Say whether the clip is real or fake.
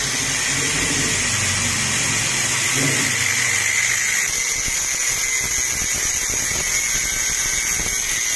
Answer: real